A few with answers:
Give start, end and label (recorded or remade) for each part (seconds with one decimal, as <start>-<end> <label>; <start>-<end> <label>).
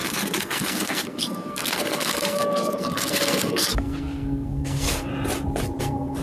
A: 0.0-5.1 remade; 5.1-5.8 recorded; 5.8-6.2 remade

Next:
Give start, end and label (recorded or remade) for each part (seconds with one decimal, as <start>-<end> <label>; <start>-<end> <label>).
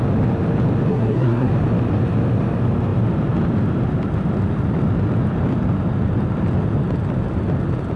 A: 0.0-0.9 recorded; 0.9-1.5 remade; 1.5-8.0 recorded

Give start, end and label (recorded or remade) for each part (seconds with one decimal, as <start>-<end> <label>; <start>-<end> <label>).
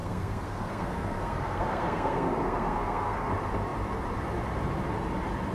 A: 0.0-3.3 remade; 3.3-5.5 recorded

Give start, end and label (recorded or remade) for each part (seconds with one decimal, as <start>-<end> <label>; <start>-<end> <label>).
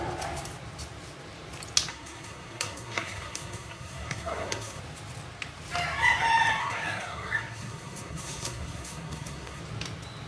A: 0.0-1.9 recorded; 1.9-4.8 remade; 4.8-6.6 recorded; 6.6-9.6 remade; 9.6-10.3 recorded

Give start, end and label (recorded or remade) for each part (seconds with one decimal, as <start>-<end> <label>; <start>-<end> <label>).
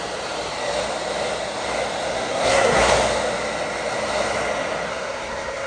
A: 0.0-2.1 recorded; 2.1-2.9 remade; 2.9-4.9 recorded; 4.9-5.7 remade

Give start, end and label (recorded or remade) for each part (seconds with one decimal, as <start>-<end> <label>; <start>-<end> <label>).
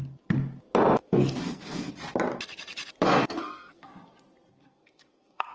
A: 0.0-1.0 recorded; 1.0-1.9 remade; 1.9-3.2 recorded; 3.2-3.9 remade; 3.9-4.5 recorded; 4.5-5.5 remade